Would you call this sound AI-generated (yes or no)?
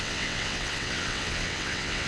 yes